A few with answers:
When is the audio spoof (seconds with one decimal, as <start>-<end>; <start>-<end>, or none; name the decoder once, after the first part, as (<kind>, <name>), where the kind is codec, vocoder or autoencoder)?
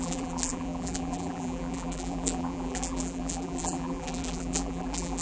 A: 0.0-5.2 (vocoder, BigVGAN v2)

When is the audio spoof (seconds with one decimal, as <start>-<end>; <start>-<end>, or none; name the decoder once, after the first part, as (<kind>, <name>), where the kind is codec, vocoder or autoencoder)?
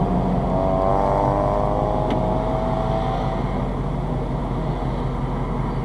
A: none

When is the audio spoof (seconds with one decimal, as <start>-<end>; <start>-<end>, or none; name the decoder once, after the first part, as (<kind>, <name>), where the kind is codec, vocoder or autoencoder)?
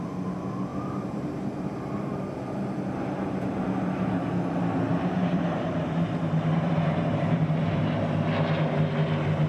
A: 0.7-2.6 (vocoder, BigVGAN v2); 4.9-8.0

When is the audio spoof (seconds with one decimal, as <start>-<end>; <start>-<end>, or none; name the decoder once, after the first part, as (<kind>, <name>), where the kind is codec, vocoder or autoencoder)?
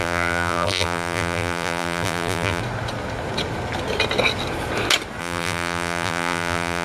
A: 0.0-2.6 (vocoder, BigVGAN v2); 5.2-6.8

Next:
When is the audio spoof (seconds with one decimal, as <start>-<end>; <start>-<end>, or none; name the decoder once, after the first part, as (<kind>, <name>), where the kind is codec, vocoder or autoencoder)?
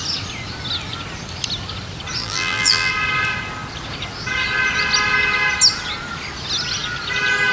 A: 2.2-2.9 (vocoder, BigVGAN v2)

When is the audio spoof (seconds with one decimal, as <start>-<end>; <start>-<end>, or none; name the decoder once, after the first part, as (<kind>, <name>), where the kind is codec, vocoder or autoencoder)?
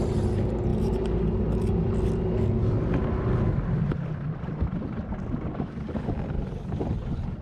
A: none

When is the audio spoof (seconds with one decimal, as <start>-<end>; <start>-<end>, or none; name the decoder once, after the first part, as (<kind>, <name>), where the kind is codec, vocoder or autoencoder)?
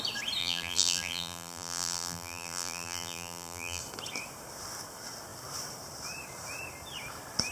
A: 0.4-3.8 (vocoder, BigVGAN v2)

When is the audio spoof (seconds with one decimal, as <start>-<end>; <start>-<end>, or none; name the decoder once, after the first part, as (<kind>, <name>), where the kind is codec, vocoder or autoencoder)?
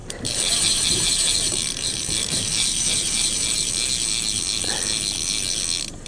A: 0.0-3.7 (vocoder, BigVGAN v2)